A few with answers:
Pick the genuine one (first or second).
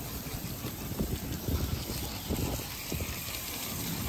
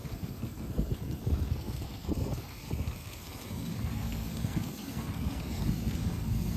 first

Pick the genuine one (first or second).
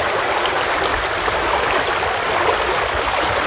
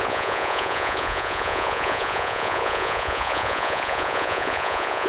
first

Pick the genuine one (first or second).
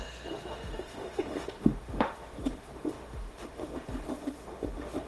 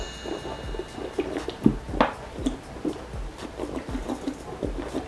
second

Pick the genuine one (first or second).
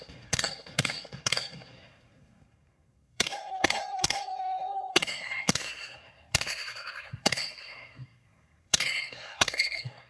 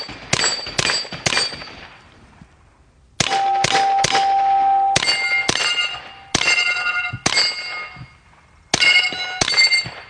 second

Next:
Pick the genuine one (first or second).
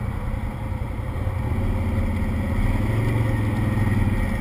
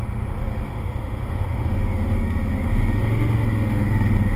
first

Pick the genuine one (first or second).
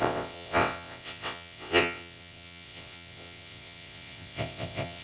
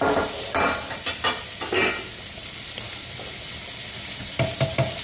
second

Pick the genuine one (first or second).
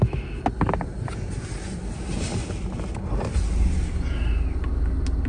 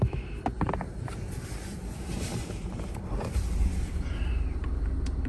first